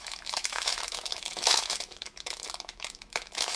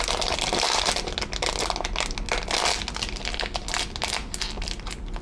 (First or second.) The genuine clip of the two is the second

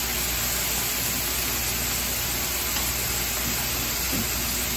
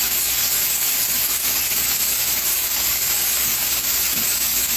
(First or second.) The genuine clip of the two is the first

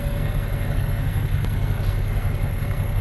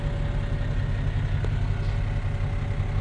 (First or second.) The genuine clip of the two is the second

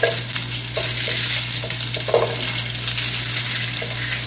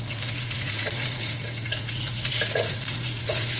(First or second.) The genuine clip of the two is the first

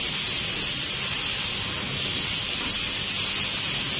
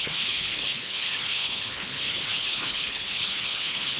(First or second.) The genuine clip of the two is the first